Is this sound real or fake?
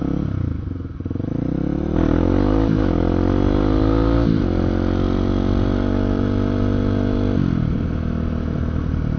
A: real